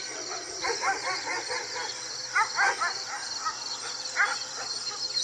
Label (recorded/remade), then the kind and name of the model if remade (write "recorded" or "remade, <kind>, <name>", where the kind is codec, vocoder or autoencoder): remade, vocoder, BigVGAN v2